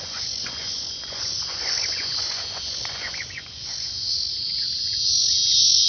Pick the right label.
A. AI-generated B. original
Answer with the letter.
A